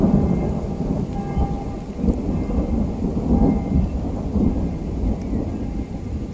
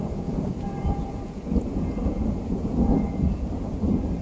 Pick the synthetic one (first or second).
second